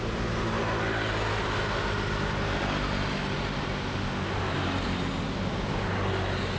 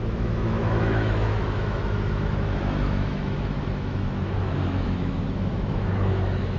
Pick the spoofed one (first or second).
second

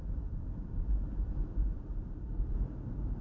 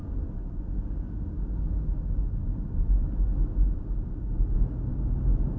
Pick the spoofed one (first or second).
first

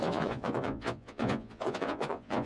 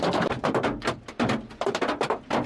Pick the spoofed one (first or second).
first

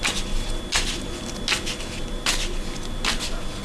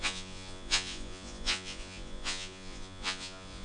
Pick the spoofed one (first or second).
second